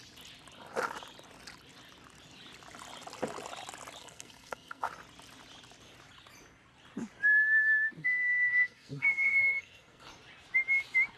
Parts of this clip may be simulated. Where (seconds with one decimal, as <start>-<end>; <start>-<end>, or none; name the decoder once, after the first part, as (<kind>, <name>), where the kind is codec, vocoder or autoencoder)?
4.0-4.9 (codec, SNAC); 8.0-10.1